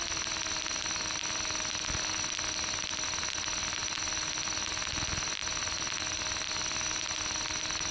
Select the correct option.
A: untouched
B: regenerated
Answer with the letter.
A